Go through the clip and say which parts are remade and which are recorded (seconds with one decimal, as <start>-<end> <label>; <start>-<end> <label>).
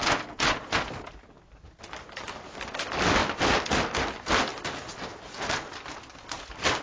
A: 0.0-6.8 recorded